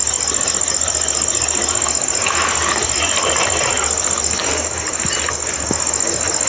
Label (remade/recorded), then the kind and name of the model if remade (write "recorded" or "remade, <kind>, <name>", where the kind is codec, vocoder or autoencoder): recorded